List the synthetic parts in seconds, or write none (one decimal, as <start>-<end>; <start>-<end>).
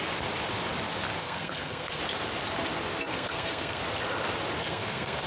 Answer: 1.2-2.0; 3.1-3.8; 4.6-5.3